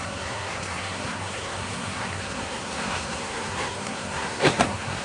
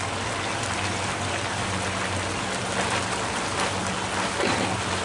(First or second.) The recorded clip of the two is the second